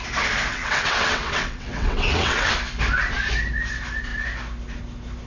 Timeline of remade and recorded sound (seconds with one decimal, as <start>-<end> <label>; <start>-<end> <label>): 0.0-0.5 recorded; 0.5-2.5 remade; 2.5-5.3 recorded